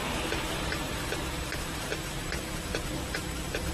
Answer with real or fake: fake